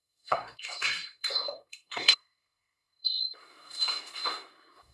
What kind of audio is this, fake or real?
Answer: fake